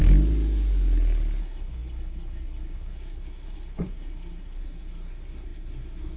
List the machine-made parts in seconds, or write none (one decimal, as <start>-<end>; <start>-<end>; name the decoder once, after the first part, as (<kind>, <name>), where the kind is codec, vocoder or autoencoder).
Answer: 1.4-6.2 (codec, SNAC)